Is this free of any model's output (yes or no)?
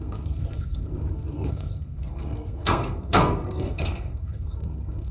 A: no